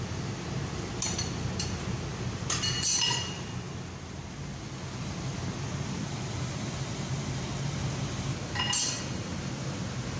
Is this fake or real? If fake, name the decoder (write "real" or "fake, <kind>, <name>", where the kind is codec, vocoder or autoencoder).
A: real